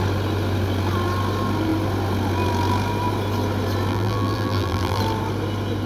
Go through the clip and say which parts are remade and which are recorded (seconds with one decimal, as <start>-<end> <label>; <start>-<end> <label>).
0.0-3.9 recorded; 3.9-5.0 remade; 5.0-5.9 recorded